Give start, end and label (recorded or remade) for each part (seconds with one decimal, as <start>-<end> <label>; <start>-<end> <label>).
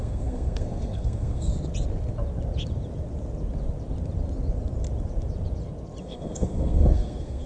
0.0-1.5 remade; 1.5-6.0 recorded; 6.0-7.5 remade